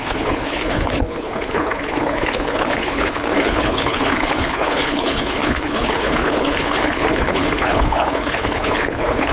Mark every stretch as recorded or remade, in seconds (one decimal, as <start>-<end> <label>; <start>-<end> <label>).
0.0-9.3 remade